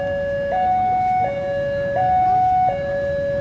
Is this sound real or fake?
real